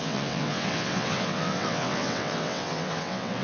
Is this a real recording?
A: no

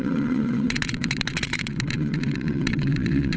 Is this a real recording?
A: no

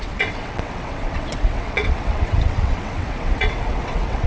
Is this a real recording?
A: no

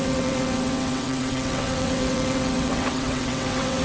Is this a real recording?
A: no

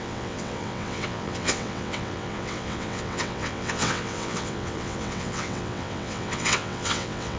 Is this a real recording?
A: no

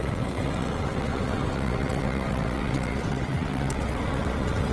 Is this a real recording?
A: no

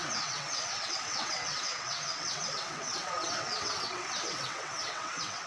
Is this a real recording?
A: no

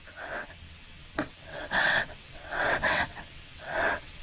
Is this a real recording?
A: no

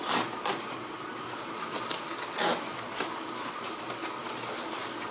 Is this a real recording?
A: yes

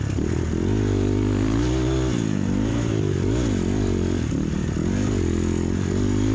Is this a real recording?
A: yes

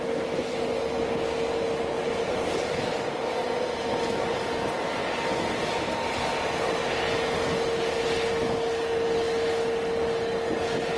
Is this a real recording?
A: yes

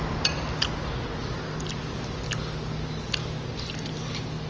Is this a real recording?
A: yes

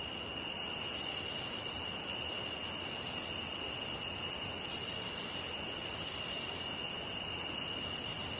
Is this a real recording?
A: yes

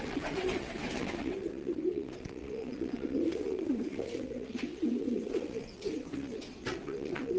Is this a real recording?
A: no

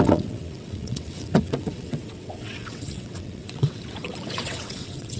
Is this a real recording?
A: no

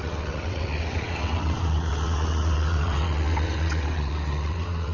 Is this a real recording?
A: no